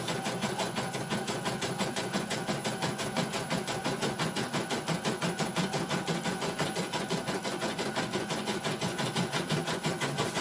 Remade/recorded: remade